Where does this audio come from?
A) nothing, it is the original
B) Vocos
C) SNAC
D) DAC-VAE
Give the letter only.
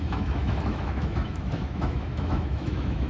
D